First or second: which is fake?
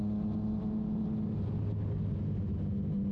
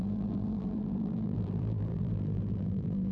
second